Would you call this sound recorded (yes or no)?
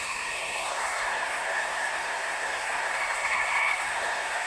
no